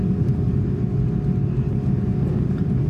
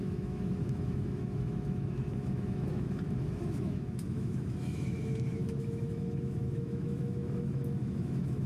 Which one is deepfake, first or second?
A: second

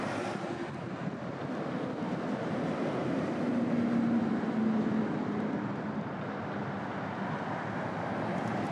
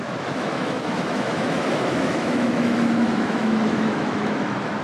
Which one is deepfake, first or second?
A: second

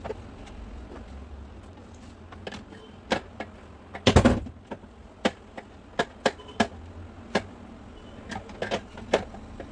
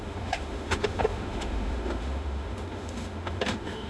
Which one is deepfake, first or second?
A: second